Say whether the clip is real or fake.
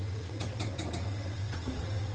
fake